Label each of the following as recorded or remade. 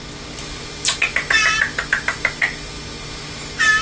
recorded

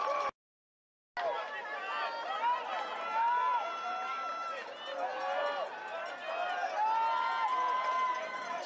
recorded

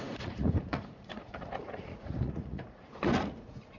remade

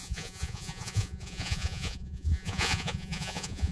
remade